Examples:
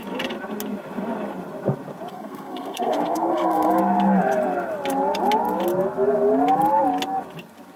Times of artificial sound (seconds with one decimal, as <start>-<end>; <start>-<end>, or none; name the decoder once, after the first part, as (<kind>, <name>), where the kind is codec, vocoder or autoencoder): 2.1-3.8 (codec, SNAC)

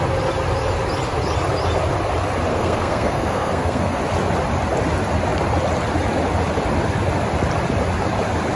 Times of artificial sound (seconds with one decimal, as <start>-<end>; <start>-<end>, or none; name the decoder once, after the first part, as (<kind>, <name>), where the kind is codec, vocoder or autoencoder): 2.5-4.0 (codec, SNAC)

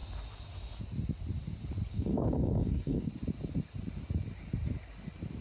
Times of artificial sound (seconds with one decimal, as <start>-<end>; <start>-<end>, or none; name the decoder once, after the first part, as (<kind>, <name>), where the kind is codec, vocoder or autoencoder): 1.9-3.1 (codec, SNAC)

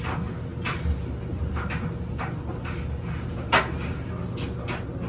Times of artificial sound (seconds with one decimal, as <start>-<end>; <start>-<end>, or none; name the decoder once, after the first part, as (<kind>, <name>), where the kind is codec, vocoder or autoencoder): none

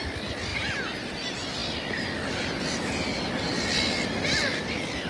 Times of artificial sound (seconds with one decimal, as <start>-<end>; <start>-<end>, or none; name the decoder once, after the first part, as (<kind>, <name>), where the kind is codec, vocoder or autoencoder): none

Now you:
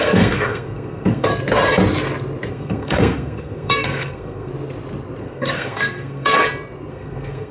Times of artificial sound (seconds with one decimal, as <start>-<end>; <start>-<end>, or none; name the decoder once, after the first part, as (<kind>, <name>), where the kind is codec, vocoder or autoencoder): 0.0-1.3 (codec, SNAC); 2.5-4.5; 5.2-6.4; 6.9-7.5

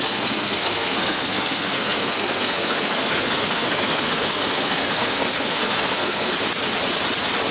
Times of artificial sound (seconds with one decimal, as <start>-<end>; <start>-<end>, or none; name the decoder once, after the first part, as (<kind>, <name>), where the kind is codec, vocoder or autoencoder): 0.0-6.3 (codec, SNAC)